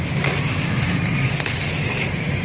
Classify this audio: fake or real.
real